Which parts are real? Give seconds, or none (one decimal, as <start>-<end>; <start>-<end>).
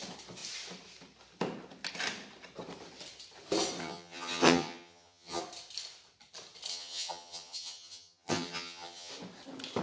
0.0-3.8; 5.4-6.7; 9.1-9.8